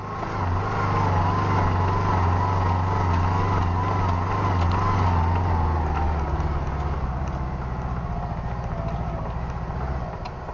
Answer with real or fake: real